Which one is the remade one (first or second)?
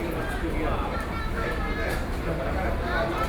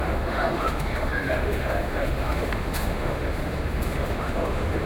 second